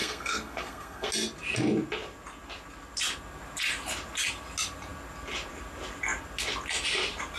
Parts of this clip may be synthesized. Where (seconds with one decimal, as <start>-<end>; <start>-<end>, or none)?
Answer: 0.0-1.1